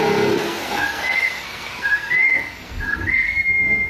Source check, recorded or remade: remade